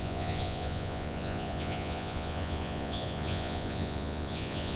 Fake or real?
fake